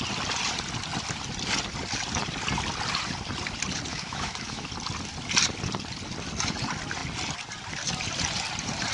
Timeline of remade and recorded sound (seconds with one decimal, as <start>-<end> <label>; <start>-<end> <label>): 0.0-3.9 recorded; 3.9-4.7 remade; 4.7-8.9 recorded